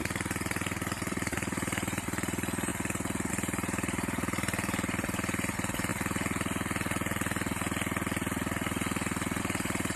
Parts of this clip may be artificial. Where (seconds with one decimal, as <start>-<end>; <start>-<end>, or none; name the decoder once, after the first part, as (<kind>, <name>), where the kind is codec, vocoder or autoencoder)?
0.0-2.7 (vocoder, BigVGAN v2); 3.3-5.9; 9.4-10.0